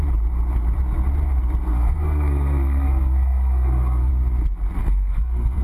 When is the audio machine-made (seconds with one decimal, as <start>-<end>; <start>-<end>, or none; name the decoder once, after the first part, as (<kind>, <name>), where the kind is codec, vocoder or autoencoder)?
1.7-4.1 (codec, SNAC); 4.8-5.6